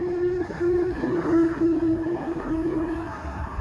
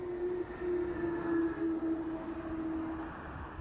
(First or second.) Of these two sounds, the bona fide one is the second